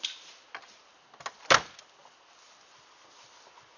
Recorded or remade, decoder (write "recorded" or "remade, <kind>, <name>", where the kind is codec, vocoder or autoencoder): recorded